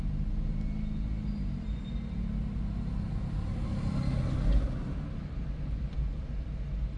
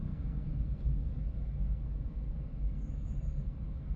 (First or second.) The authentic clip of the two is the first